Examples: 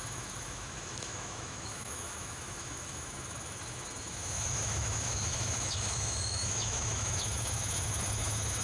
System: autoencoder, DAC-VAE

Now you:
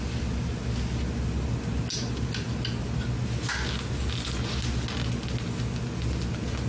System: none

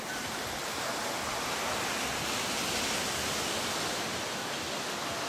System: none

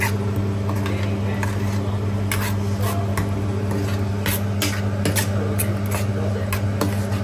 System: none